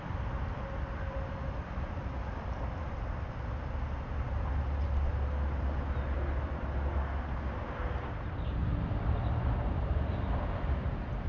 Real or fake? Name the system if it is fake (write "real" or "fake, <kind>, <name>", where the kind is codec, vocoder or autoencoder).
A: real